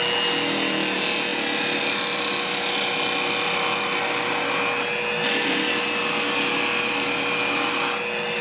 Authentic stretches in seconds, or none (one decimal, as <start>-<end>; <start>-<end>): 0.0-8.4

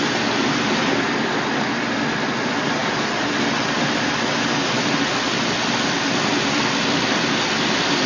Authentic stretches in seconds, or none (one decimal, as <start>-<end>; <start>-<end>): 0.0-8.1

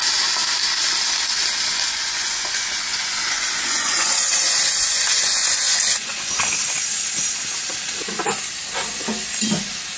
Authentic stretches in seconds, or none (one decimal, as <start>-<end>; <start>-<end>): 0.0-1.7; 6.4-10.0

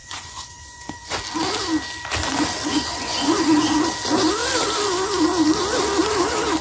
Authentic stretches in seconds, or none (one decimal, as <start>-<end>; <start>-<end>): 1.1-2.7; 3.7-6.6

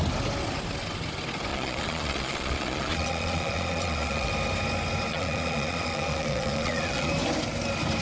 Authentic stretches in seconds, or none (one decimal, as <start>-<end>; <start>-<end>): 0.0-1.5; 4.3-5.1; 7.1-8.0

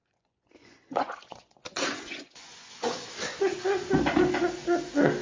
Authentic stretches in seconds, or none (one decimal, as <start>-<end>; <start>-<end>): 3.1-5.2

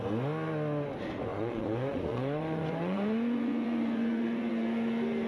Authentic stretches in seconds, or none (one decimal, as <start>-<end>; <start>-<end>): 0.0-1.3; 4.5-5.3